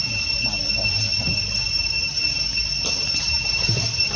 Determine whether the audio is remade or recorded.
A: recorded